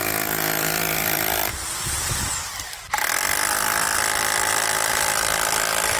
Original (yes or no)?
no